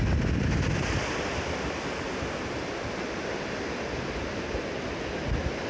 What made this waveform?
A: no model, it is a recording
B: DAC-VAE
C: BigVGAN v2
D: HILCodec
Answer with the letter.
A